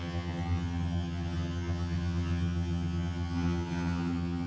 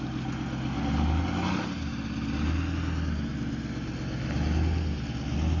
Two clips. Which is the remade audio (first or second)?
first